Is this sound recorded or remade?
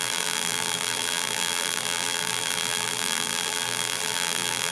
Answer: remade